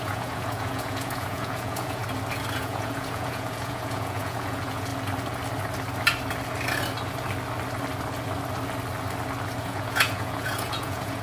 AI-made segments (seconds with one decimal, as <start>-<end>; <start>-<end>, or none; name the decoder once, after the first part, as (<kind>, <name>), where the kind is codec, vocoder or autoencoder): 0.0-2.0 (vocoder, Vocos); 2.5-4.9; 9.6-11.2

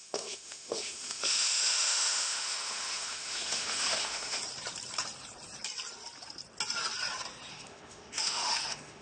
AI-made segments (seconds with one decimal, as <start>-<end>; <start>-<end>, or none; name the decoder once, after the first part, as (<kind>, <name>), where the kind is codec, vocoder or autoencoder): 0.0-4.4 (autoencoder, DAC-VAE); 7.5-9.0

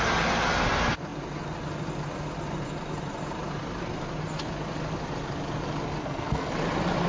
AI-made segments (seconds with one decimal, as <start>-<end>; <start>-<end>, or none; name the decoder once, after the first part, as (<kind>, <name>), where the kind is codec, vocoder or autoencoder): 6.0-6.5 (codec, SNAC)